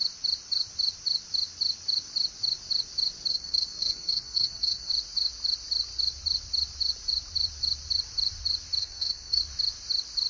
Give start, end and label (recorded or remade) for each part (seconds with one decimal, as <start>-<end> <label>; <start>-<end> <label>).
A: 0.0-3.3 recorded; 3.3-4.9 remade; 4.9-8.8 recorded; 8.8-9.4 remade; 9.4-10.3 recorded

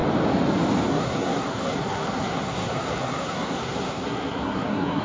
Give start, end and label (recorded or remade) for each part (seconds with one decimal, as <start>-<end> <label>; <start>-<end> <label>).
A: 0.0-0.9 recorded; 0.9-5.0 remade

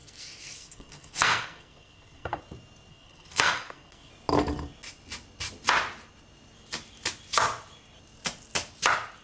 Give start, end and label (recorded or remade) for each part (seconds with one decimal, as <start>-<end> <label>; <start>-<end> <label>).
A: 0.0-2.4 remade; 2.4-2.9 recorded; 2.9-4.1 remade; 4.1-9.2 recorded

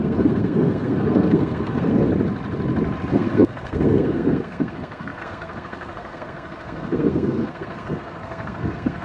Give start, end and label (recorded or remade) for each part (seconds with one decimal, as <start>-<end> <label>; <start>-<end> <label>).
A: 0.0-2.1 remade; 2.1-3.1 recorded; 3.1-9.0 remade

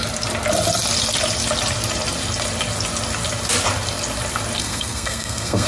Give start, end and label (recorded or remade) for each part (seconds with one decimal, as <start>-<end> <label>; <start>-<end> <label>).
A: 0.0-4.6 recorded; 4.6-5.7 remade

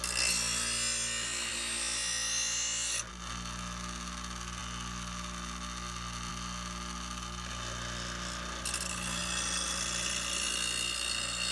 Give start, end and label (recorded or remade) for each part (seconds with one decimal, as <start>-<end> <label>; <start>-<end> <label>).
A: 0.0-11.5 recorded